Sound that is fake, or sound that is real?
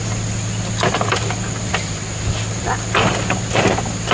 real